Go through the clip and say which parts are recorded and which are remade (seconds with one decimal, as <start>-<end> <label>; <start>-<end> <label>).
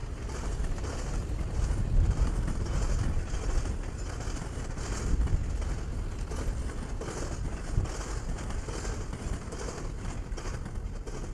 0.0-3.1 remade; 3.1-11.3 recorded